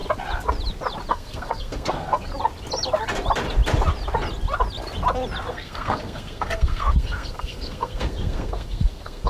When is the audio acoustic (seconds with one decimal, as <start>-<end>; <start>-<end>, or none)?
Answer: 0.0-1.1; 2.3-5.5